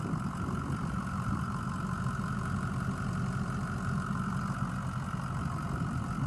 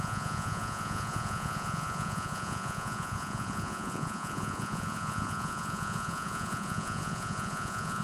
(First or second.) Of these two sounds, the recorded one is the first